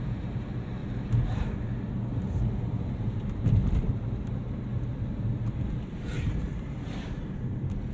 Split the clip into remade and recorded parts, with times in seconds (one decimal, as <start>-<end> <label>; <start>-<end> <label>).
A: 0.0-0.8 remade; 0.8-1.9 recorded; 1.9-4.7 remade; 4.7-5.4 recorded; 5.4-7.9 remade